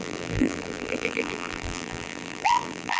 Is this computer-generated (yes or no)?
yes